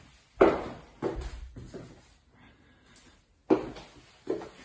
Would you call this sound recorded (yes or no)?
yes